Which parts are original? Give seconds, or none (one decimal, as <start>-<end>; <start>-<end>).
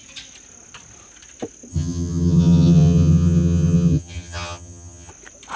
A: 0.0-1.7; 5.1-5.6